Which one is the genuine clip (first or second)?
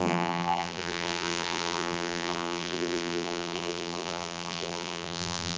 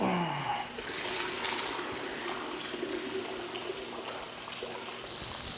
second